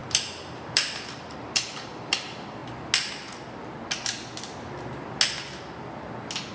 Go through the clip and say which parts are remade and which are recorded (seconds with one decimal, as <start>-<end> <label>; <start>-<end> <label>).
0.0-2.6 remade; 2.6-6.5 recorded